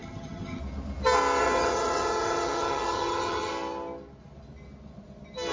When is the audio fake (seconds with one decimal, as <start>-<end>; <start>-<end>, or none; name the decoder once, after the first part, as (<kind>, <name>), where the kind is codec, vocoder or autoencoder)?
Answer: 0.0-0.6 (vocoder, HiFi-GAN); 1.4-3.5